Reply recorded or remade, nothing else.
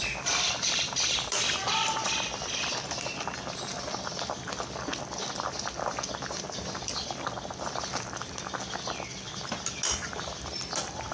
recorded